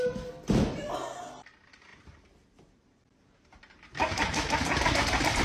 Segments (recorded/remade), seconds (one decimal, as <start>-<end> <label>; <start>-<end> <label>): 0.0-1.9 recorded; 1.9-5.4 remade